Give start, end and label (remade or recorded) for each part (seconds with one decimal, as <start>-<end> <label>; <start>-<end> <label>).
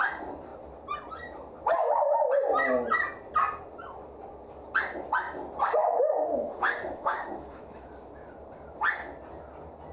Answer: 0.0-5.8 recorded; 5.8-7.9 remade; 7.9-9.9 recorded